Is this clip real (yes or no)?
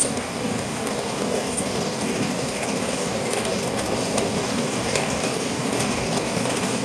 no